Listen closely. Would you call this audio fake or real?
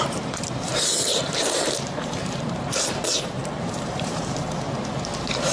fake